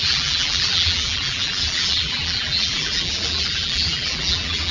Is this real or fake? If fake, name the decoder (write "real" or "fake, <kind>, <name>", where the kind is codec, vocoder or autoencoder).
fake, vocoder, BigVGAN v2